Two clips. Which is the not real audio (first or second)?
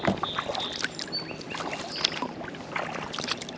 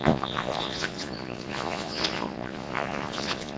second